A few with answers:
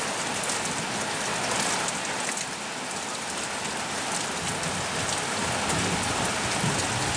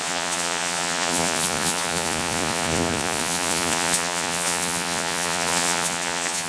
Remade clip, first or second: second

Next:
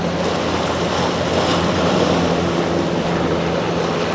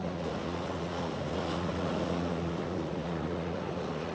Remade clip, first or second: second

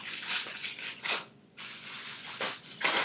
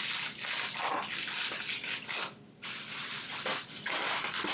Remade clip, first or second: first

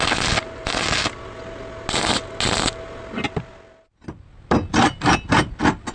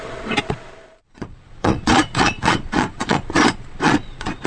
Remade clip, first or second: second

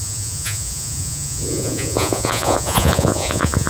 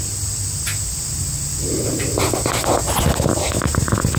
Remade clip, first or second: first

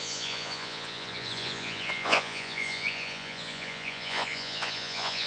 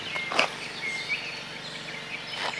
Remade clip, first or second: first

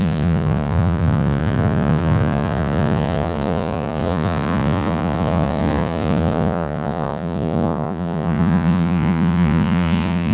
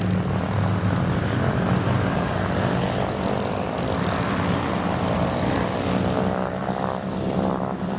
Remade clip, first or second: first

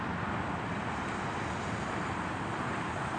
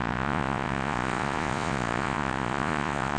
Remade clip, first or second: second